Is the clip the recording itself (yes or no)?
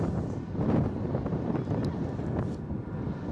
yes